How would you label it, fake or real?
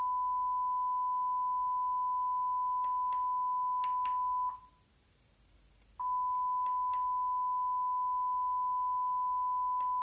real